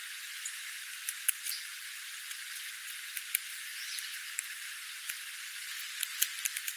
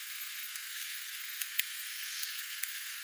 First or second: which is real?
first